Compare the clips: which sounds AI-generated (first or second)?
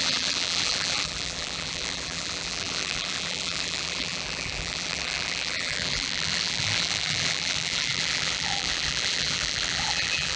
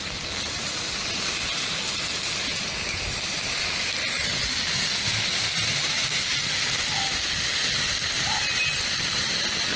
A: first